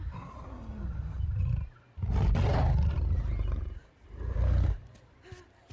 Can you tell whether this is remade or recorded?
recorded